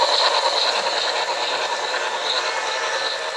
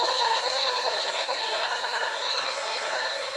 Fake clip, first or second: second